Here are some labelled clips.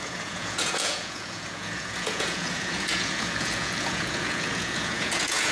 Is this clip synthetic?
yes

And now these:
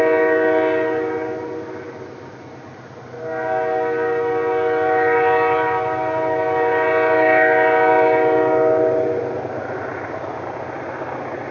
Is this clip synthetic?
no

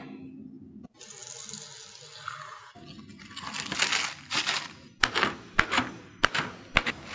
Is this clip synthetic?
no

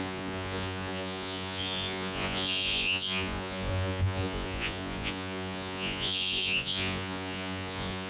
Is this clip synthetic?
yes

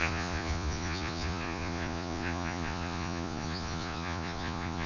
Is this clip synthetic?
yes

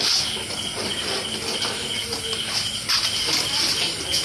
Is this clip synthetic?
no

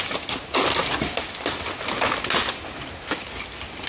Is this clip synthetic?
no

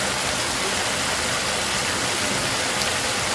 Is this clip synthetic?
no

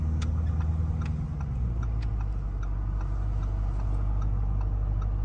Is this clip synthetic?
no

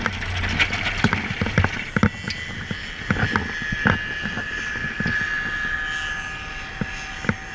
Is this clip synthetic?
no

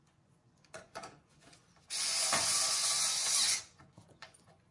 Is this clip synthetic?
yes